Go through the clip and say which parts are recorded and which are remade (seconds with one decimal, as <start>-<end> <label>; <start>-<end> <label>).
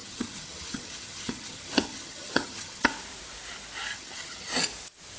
0.0-2.9 remade; 2.9-3.9 recorded; 3.9-4.5 remade; 4.5-5.2 recorded